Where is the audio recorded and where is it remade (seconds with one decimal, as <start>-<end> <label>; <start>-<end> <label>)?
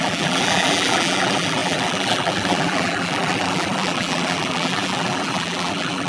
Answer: 0.0-6.1 remade